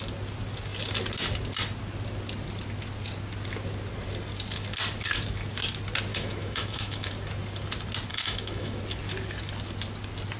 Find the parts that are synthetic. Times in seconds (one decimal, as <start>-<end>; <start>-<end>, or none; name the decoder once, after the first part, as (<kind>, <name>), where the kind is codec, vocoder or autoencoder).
6.1-7.1 (autoencoder, DAC-VAE); 8.1-8.8